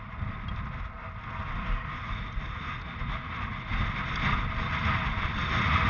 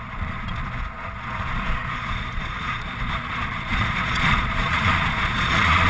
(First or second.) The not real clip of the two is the second